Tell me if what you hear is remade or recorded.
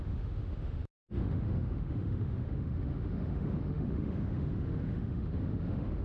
remade